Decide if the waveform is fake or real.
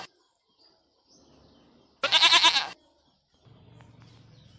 real